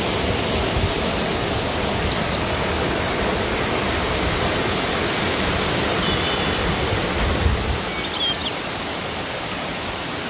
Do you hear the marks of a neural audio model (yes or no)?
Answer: no